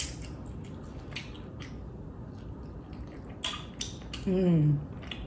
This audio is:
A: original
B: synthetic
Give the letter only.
A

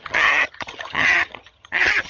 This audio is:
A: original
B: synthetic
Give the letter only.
B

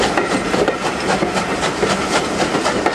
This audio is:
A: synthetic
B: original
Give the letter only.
B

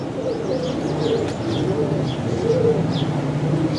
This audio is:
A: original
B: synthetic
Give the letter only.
A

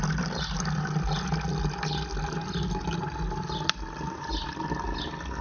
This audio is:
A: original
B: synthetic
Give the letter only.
A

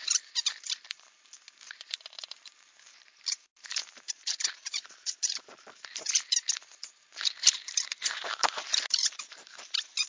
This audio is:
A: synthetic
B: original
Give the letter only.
A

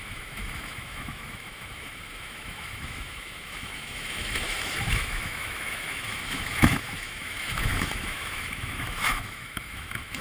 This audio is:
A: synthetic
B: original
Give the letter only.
A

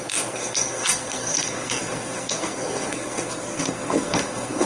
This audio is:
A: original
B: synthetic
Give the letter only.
B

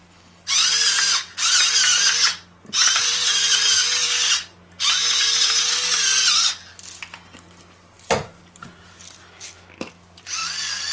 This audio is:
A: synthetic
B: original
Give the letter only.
B